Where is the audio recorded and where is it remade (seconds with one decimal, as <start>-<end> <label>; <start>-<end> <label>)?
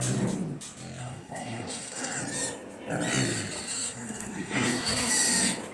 0.0-1.0 recorded; 1.0-2.2 remade; 2.2-3.7 recorded; 3.7-5.1 remade; 5.1-5.7 recorded